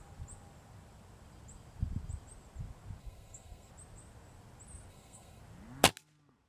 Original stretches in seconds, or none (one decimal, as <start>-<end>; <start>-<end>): 0.0-3.0; 3.7-4.9; 5.4-6.5